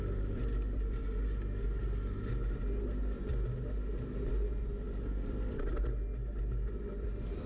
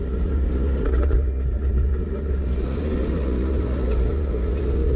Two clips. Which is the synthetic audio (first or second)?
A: second